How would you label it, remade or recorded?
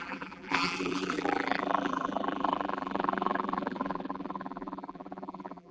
remade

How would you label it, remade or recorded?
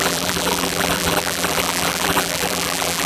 remade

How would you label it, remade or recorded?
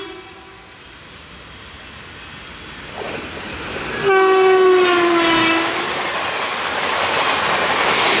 recorded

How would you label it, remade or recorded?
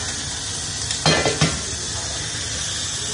recorded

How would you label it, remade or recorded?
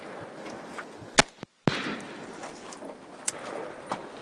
recorded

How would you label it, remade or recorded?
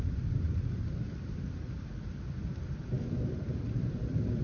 remade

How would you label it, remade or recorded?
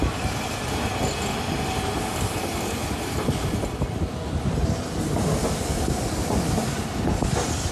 recorded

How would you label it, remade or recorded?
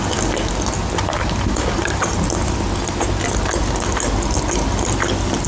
recorded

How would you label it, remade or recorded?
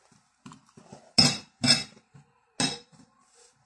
recorded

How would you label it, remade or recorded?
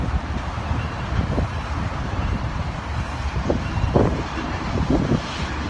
remade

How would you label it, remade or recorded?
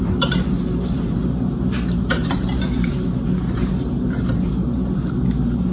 remade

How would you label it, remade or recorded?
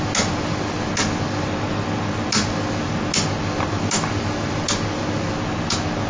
recorded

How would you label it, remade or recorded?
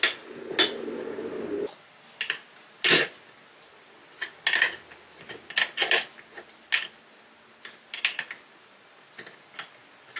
recorded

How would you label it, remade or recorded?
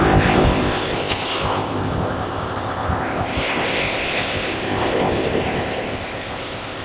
remade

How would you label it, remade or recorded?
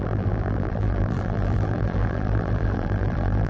remade